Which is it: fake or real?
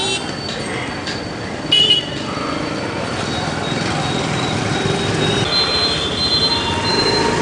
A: real